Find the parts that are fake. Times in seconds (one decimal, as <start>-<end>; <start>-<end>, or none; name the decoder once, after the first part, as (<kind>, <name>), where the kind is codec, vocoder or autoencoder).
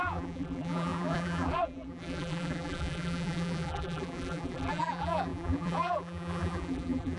0.0-7.2 (vocoder, BigVGAN v2)